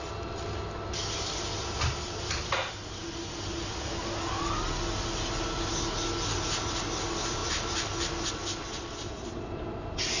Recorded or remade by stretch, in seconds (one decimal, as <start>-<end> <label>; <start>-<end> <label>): 0.0-10.2 recorded

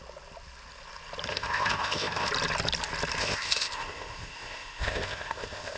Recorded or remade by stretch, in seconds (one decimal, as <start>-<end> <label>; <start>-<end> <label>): 0.0-1.3 recorded; 1.3-2.3 remade; 2.3-3.2 recorded; 3.2-5.8 remade

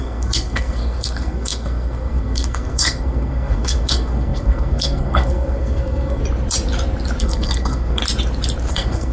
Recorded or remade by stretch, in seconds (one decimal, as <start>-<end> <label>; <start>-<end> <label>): 0.0-6.2 remade; 6.2-7.2 recorded; 7.2-8.0 remade; 8.0-8.7 recorded; 8.7-9.1 remade

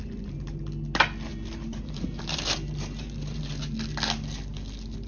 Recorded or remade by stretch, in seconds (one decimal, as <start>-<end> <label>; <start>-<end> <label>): 0.0-0.6 remade; 0.6-1.3 recorded; 1.3-3.4 remade; 3.4-5.1 recorded

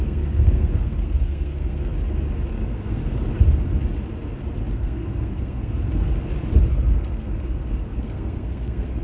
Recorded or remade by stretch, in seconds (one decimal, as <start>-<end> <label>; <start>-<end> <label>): 0.0-1.9 remade; 1.9-2.5 recorded; 2.5-3.0 remade; 3.0-4.7 recorded; 4.7-6.1 remade; 6.1-6.7 recorded; 6.7-9.0 remade

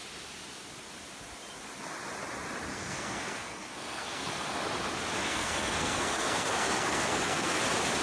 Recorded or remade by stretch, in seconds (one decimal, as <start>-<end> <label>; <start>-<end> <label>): 0.0-2.7 recorded; 2.7-4.5 remade; 4.5-5.2 recorded; 5.2-7.6 remade; 7.6-8.0 recorded